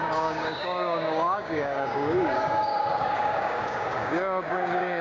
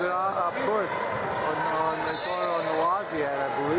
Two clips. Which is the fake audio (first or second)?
first